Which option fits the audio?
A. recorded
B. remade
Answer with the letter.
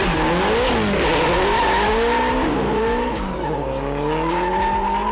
A